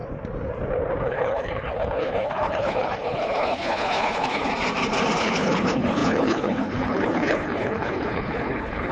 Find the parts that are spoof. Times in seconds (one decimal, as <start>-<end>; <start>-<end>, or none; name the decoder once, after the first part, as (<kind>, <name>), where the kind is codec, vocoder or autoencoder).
1.0-4.5 (codec, HILCodec); 5.2-8.9